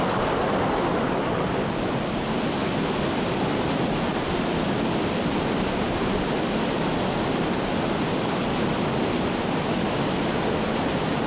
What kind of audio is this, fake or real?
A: real